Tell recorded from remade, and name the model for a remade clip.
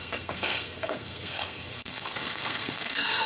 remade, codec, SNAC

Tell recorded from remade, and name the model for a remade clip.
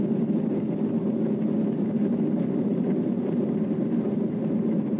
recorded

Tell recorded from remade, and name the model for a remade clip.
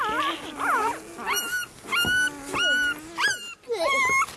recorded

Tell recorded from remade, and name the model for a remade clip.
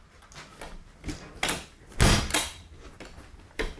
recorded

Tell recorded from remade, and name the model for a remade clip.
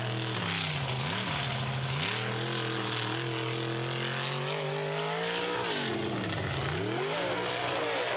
recorded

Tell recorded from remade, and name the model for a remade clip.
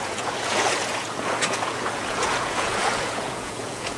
remade, vocoder, Vocos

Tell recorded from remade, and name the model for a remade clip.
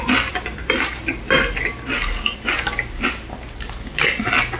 recorded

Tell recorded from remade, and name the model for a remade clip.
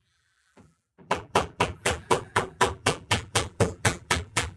remade, vocoder, BigVGAN v2